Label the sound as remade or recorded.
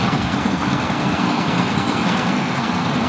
remade